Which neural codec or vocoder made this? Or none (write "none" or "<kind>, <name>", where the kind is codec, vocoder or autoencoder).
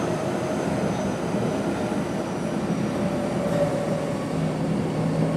none